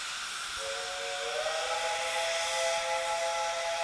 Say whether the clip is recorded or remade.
recorded